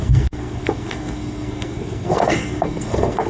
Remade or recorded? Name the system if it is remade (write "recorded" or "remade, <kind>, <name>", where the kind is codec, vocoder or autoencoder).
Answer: remade, codec, SNAC